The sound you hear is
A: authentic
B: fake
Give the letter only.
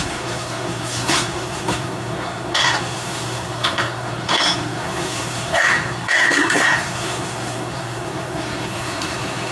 B